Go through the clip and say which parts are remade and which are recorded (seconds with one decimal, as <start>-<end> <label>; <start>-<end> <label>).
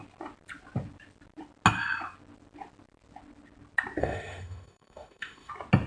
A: 0.0-4.0 recorded; 4.0-5.5 remade; 5.5-5.9 recorded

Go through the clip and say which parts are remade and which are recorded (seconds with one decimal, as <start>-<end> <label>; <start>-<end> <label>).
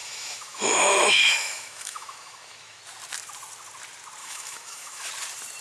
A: 0.0-2.8 remade; 2.8-4.2 recorded; 4.2-5.1 remade; 5.1-5.6 recorded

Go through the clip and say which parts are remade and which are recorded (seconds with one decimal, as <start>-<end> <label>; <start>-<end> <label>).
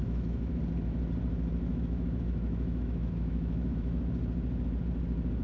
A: 0.0-0.6 remade; 0.6-1.7 recorded; 1.7-4.0 remade; 4.0-5.4 recorded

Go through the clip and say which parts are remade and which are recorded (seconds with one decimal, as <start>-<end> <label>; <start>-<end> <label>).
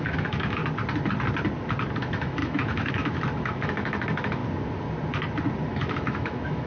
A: 0.0-0.6 remade; 0.6-2.0 recorded; 2.0-4.4 remade; 4.4-5.7 recorded; 5.7-6.7 remade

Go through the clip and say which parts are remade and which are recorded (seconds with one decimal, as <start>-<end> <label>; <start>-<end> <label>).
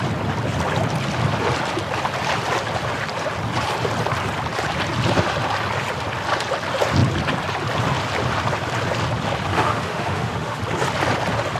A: 0.0-9.5 recorded; 9.5-10.6 remade; 10.6-11.6 recorded